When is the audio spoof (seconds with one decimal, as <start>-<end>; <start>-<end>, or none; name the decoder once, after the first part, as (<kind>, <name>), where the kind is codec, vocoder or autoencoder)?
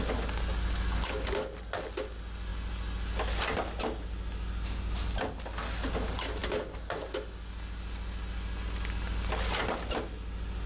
none